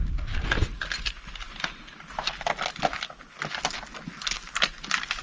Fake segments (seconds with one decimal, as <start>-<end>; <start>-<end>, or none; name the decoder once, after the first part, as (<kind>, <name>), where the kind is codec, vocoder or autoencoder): none